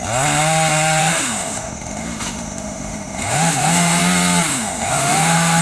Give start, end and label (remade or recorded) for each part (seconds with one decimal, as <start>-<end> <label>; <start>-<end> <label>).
0.0-1.0 recorded; 1.0-4.0 remade; 4.0-4.5 recorded; 4.5-5.6 remade